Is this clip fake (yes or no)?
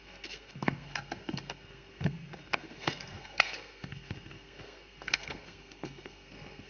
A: yes